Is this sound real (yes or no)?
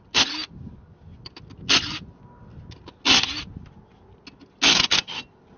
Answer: yes